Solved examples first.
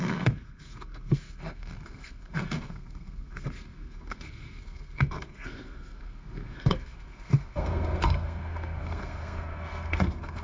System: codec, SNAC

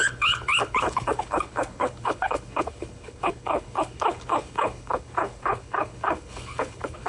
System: codec, HILCodec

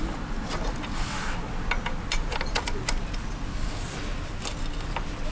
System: none